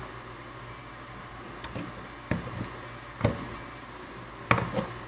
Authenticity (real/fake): real